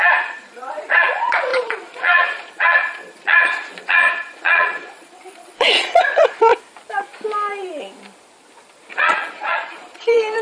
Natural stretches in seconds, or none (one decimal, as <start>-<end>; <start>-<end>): 6.5-8.9